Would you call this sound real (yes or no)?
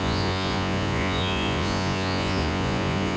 no